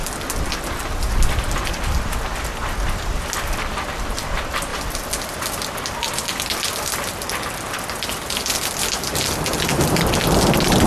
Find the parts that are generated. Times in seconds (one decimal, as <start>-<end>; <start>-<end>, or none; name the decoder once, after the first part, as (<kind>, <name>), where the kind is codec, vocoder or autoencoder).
0.0-1.5 (vocoder, BigVGAN v2); 4.7-8.8